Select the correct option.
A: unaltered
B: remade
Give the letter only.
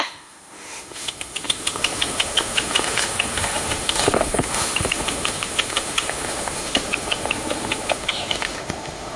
B